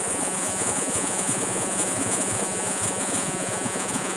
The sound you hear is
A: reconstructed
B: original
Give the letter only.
A